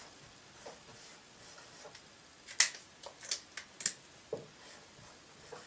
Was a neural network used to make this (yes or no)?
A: no